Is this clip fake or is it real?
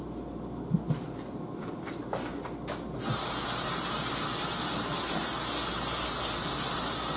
real